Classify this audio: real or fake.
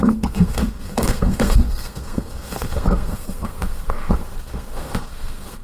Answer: fake